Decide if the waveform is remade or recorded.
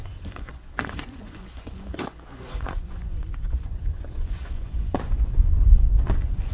remade